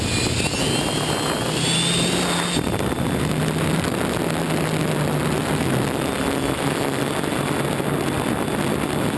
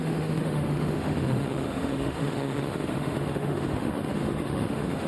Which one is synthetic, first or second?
second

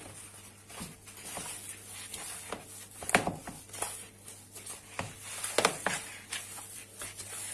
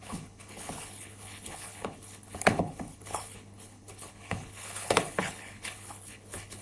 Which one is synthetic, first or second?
second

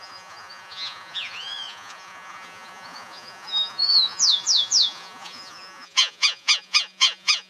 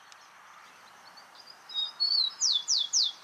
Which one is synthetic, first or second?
first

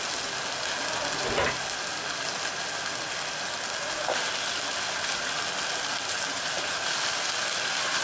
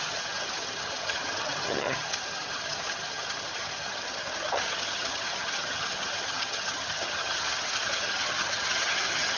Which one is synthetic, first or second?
second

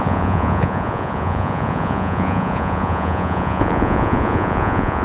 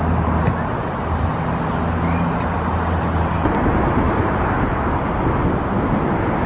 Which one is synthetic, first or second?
first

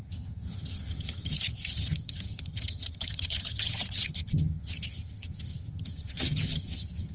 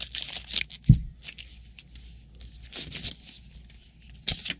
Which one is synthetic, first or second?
first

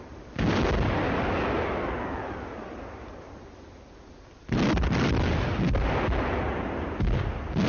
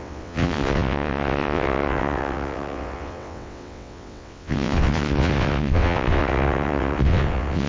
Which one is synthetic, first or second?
second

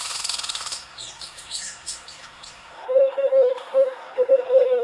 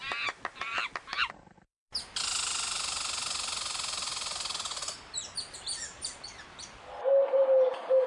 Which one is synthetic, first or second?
first